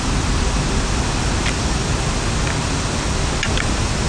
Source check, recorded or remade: recorded